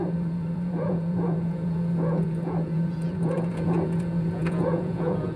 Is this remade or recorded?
remade